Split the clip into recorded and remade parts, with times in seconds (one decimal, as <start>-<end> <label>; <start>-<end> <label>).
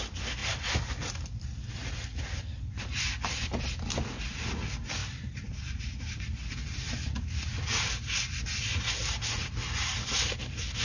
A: 0.0-0.4 recorded; 0.4-3.6 remade; 3.6-5.0 recorded; 5.0-5.8 remade; 5.8-6.4 recorded; 6.4-8.0 remade; 8.0-10.8 recorded